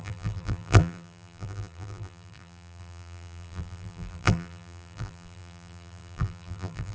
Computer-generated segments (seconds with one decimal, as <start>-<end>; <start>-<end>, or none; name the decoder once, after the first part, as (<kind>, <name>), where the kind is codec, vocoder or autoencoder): 0.0-6.9 (vocoder, BigVGAN v2)